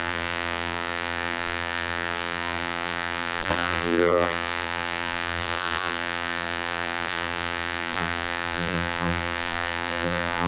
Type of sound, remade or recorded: remade